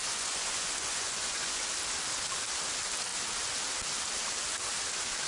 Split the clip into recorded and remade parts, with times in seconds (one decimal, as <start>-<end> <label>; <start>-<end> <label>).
0.0-1.6 remade; 1.6-5.3 recorded